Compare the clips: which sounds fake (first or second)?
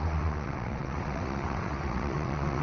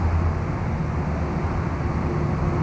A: first